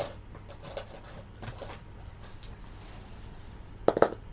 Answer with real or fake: real